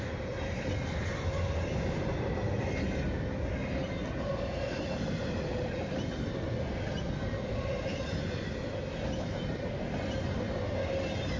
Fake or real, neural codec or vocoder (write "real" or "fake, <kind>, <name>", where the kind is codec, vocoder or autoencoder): real